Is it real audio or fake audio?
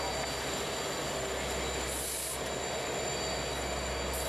real